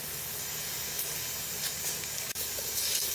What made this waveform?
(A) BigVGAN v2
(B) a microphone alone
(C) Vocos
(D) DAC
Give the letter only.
D